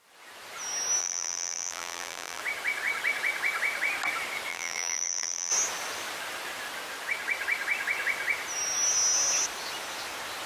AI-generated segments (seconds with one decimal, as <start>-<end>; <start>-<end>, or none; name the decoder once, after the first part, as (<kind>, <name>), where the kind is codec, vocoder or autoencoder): 1.0-2.4 (vocoder, BigVGAN v2); 4.5-5.5